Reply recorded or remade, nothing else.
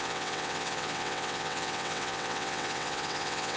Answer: remade